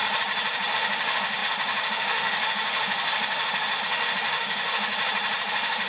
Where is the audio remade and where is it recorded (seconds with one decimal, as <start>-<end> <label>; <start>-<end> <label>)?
0.0-0.7 recorded; 0.7-4.9 remade; 4.9-5.5 recorded; 5.5-5.9 remade

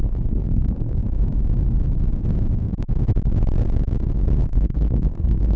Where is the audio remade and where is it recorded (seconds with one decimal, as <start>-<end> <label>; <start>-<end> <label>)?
0.0-1.0 remade; 1.0-4.4 recorded; 4.4-5.6 remade